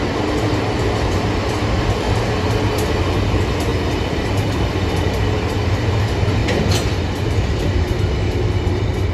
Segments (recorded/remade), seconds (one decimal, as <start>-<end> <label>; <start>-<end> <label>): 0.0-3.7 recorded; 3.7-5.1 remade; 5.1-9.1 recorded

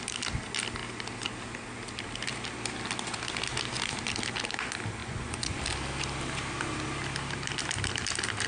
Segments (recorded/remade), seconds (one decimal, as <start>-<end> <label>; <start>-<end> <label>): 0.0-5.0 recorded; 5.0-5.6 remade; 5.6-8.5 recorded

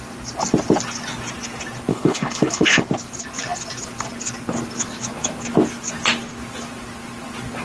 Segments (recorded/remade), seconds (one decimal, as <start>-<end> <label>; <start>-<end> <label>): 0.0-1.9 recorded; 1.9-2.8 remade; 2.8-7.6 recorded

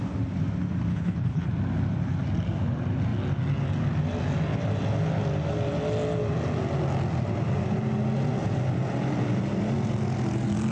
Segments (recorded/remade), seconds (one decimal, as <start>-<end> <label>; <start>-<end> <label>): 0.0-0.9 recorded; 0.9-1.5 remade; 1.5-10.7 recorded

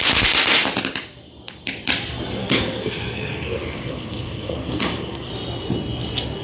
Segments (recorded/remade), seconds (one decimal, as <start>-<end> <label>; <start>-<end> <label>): 0.0-2.4 recorded; 2.4-5.3 remade; 5.3-6.4 recorded